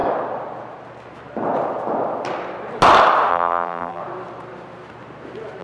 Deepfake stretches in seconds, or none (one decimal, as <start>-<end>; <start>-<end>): 3.3-4.0